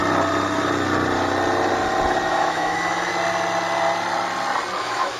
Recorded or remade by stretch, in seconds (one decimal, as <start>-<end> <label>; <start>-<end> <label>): 0.0-2.3 recorded; 2.3-3.1 remade; 3.1-4.8 recorded; 4.8-5.2 remade